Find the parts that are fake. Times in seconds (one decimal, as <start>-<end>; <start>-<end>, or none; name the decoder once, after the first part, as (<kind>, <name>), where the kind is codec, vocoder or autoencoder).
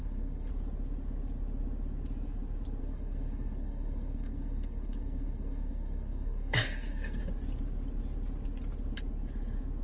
0.0-0.5 (codec, SNAC); 2.8-7.2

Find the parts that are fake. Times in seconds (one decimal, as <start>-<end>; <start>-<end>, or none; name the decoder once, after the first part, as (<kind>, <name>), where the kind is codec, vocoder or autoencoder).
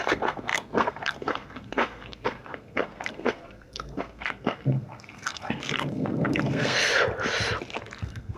0.0-6.9 (codec, SNAC); 8.0-8.4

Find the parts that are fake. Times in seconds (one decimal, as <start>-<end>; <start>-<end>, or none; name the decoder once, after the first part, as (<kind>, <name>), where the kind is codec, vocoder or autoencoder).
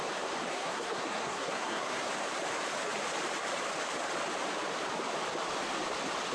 0.5-2.1 (codec, SNAC)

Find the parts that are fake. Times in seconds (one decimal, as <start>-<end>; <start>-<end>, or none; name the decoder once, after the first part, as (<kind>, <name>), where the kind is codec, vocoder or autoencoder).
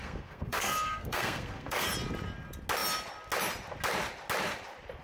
0.0-1.9 (codec, SNAC)